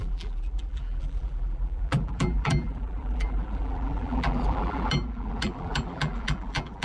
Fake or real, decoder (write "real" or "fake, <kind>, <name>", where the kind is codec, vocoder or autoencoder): fake, vocoder, BigVGAN v2